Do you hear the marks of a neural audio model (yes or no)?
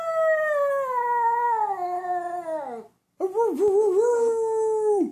no